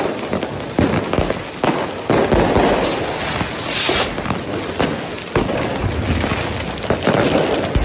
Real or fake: real